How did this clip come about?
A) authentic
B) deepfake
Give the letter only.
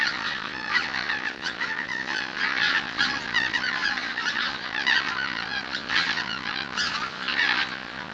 B